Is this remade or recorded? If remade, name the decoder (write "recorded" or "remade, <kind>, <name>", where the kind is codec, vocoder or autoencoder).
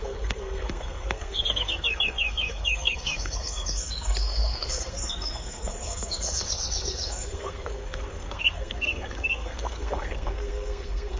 remade, codec, SNAC